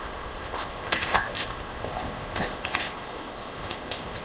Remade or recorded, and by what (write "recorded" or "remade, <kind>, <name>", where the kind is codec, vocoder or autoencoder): remade, codec, ZipCodec